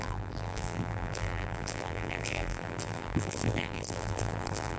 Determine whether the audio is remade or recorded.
remade